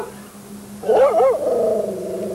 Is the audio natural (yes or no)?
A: yes